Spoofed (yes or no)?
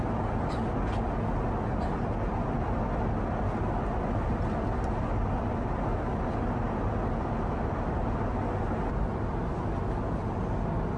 no